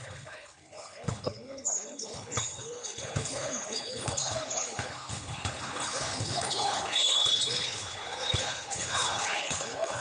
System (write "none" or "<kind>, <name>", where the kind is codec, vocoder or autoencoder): codec, HILCodec